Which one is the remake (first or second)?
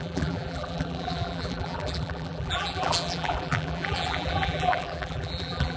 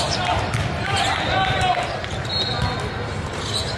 first